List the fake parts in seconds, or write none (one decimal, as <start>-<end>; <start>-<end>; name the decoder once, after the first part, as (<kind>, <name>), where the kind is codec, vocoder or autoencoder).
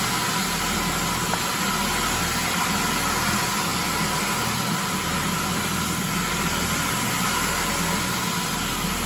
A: 3.7-7.7 (vocoder, BigVGAN v2)